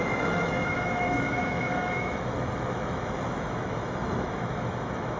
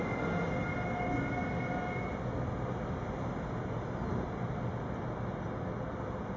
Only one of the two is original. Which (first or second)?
second